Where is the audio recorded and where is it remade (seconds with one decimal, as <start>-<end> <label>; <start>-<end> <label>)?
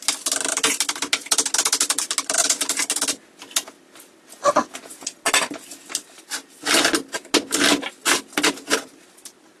0.0-9.6 recorded